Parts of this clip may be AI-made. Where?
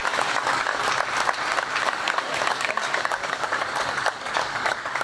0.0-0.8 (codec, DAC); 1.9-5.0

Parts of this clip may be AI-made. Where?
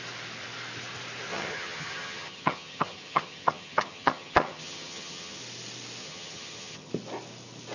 1.3-5.4 (vocoder, HiFi-GAN); 6.0-6.9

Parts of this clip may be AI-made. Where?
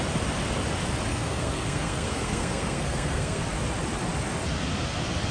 1.1-3.4 (codec, SNAC)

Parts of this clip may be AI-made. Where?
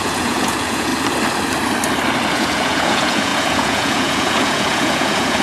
0.0-0.9 (vocoder, Vocos); 2.3-5.4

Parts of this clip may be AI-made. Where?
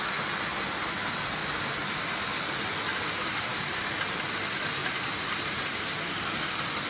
2.9-3.9 (vocoder, BigVGAN v2); 4.8-5.9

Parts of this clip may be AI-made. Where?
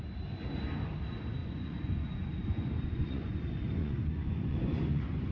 1.4-3.4 (vocoder, Vocos); 3.8-5.3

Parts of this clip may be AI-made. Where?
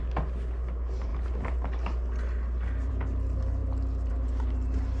none